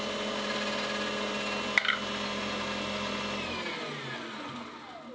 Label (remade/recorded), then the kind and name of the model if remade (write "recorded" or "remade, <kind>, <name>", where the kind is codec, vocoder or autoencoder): recorded